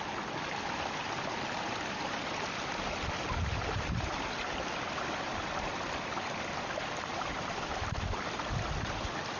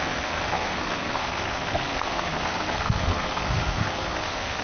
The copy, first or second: second